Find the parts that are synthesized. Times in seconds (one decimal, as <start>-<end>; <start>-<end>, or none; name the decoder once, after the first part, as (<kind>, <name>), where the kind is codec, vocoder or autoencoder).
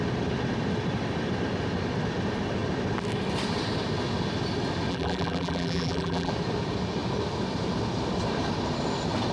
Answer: 4.9-6.3 (vocoder, BigVGAN v2)